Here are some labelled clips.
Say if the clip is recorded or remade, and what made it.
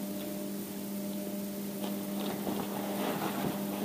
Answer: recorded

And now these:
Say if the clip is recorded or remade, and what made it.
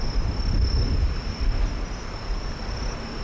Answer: recorded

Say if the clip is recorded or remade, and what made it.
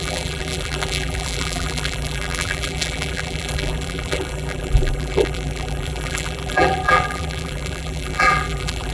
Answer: remade, vocoder, BigVGAN v2